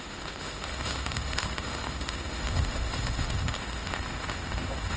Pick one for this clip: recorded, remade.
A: remade